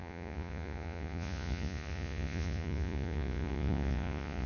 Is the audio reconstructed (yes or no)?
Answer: yes